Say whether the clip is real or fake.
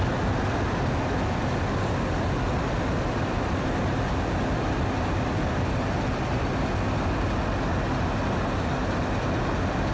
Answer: real